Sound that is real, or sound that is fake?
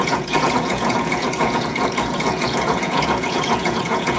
fake